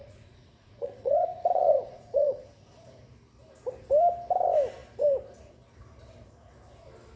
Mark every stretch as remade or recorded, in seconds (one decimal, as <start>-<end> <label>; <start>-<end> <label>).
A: 0.0-2.4 remade; 2.4-7.2 recorded